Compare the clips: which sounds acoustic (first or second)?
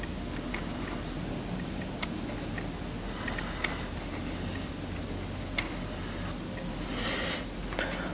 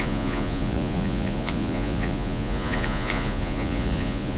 first